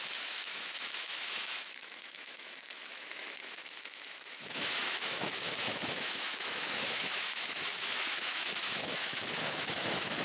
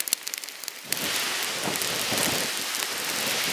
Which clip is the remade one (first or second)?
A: first